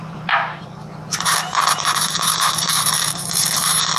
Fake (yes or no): yes